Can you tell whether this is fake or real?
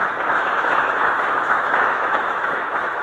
fake